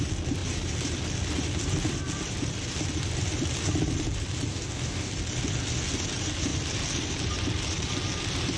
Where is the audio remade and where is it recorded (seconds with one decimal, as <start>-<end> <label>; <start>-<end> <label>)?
0.0-4.5 recorded; 4.5-5.1 remade; 5.1-8.6 recorded